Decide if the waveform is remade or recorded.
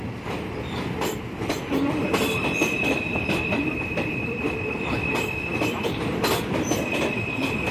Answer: remade